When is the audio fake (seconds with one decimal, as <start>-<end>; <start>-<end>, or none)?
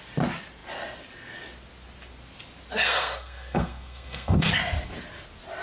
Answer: 2.8-4.5